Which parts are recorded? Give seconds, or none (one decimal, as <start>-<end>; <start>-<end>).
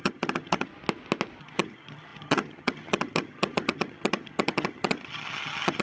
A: 0.7-1.4